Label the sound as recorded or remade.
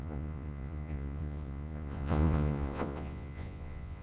remade